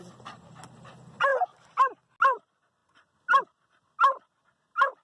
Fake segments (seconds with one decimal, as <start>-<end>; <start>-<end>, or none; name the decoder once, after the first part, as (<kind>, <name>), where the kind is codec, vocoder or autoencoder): none